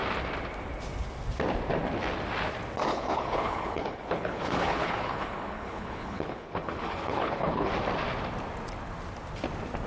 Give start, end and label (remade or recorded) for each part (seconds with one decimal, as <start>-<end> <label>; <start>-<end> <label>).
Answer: 0.0-2.9 recorded; 2.9-7.7 remade; 7.7-9.9 recorded